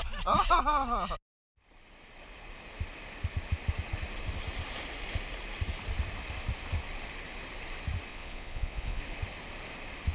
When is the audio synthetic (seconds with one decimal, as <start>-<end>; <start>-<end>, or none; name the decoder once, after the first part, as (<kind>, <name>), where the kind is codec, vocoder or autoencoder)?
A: 8.1-9.0 (vocoder, Vocos)